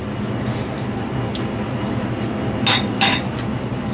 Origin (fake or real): real